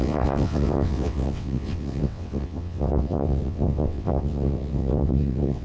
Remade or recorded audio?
remade